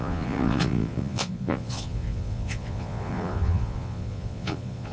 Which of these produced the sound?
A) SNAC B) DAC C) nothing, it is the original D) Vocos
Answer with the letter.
D